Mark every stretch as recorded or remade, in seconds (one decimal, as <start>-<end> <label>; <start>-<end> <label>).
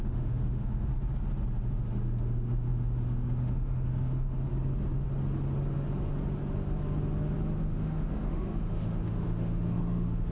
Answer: 0.0-0.9 remade; 0.9-1.8 recorded; 1.8-4.5 remade; 4.5-7.6 recorded; 7.6-10.3 remade